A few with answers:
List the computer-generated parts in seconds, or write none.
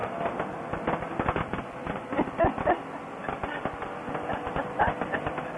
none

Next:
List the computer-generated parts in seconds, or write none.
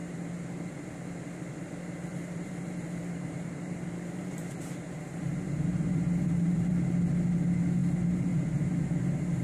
0.0-0.9 (vocoder, BigVGAN v2); 2.1-6.7; 7.8-8.8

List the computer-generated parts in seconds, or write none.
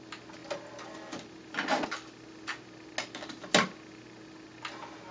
none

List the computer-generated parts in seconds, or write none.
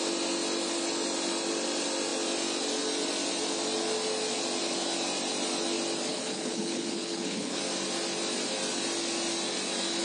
6.1-7.6 (codec, HILCodec)